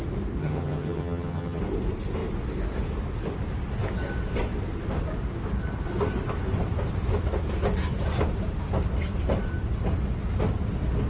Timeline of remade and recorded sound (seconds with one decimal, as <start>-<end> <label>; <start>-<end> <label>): 0.0-0.4 recorded; 0.4-1.6 remade; 1.6-11.1 recorded